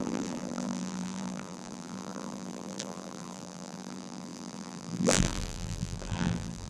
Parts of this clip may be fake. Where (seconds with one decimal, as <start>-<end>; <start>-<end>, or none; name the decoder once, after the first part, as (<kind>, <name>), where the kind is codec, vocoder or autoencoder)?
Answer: 0.0-6.7 (vocoder, BigVGAN v2)